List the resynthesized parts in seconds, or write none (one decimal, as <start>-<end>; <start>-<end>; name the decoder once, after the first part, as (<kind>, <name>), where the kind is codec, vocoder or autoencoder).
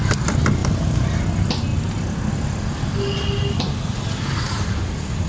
0.6-1.2 (vocoder, BigVGAN v2)